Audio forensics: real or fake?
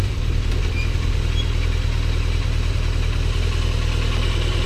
real